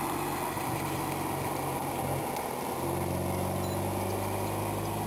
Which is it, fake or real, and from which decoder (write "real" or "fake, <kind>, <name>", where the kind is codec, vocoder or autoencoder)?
real